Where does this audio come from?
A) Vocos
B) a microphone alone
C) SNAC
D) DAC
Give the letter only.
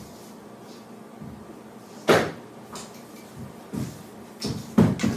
B